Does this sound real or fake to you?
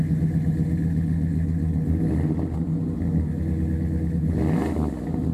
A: real